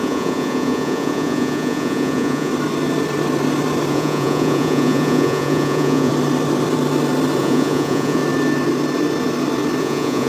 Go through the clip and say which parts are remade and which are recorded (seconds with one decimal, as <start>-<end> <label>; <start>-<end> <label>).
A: 0.0-2.5 remade; 2.5-3.9 recorded; 3.9-6.1 remade; 6.1-7.4 recorded; 7.4-8.2 remade; 8.2-9.8 recorded; 9.8-10.3 remade